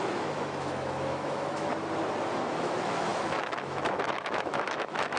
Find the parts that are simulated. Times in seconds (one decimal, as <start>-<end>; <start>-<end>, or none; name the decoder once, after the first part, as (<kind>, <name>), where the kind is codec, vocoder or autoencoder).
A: 0.0-1.7 (autoencoder, DAC-VAE); 2.5-5.2